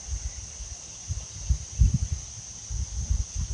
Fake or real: real